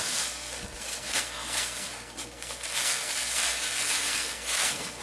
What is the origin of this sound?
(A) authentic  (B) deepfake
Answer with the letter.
B